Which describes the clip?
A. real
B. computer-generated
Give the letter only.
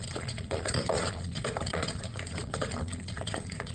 B